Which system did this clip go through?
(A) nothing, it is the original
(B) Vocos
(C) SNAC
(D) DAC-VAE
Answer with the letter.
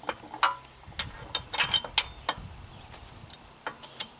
A